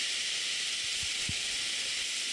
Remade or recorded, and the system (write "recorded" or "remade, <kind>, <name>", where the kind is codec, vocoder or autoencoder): recorded